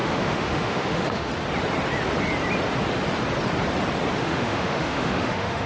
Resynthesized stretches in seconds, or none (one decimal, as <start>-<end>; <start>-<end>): 0.0-1.3; 4.2-5.7